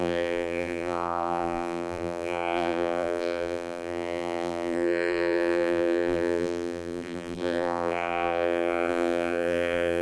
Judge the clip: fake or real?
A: fake